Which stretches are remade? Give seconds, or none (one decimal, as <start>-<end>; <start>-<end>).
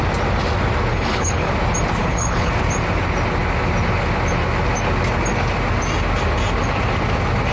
0.9-1.5; 2.0-2.5